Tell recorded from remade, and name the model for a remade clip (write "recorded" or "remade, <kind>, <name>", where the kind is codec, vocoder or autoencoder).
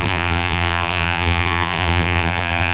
remade, vocoder, BigVGAN v2